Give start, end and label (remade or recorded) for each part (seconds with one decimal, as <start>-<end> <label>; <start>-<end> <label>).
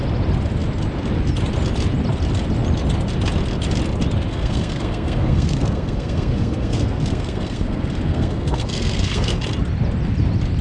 0.0-4.3 recorded; 4.3-9.4 remade; 9.4-10.6 recorded